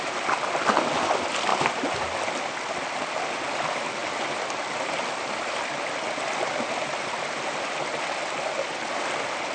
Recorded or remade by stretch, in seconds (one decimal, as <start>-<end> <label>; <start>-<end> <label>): 0.0-9.5 recorded